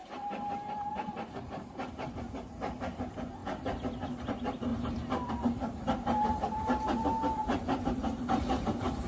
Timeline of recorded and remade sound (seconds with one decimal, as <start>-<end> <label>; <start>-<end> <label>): 0.0-3.4 remade; 3.4-4.3 recorded; 4.3-9.1 remade